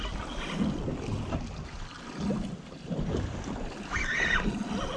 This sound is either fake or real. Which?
real